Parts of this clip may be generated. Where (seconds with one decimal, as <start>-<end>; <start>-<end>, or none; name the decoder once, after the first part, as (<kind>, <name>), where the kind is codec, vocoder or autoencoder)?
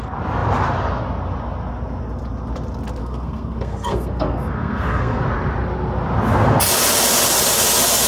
3.0-5.2 (codec, SNAC)